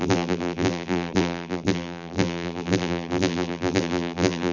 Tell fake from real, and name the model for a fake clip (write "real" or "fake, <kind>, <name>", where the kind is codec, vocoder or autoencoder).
fake, vocoder, BigVGAN v2